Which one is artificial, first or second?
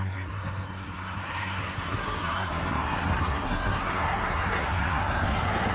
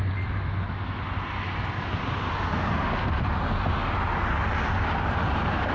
first